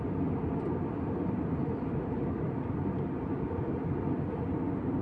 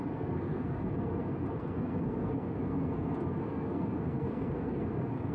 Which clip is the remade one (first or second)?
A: second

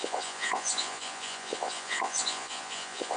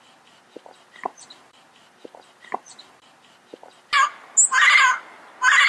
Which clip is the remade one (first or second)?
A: first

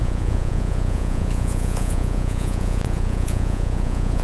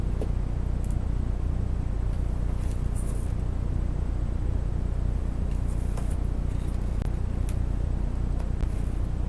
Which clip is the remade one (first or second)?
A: first